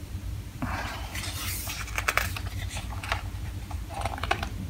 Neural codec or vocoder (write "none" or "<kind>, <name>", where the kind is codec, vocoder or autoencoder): vocoder, BigVGAN v2